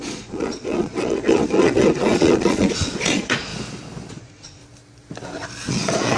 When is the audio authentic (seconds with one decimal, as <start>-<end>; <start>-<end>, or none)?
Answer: 3.5-4.1; 4.6-5.7